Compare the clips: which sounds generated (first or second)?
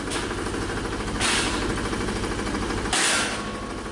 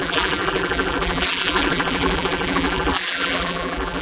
second